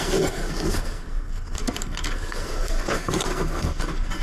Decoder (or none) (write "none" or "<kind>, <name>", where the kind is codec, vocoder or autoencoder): codec, SNAC